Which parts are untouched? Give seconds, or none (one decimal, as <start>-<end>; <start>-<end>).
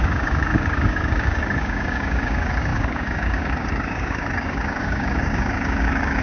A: none